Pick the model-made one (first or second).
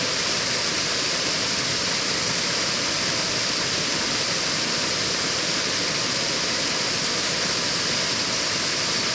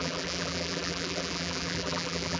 second